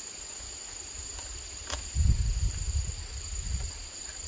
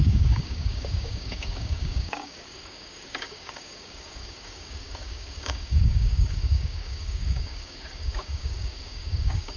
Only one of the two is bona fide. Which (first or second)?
first